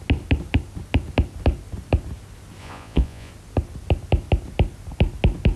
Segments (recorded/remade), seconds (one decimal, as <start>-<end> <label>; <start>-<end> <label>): 0.0-2.6 recorded; 2.6-3.3 remade; 3.3-5.6 recorded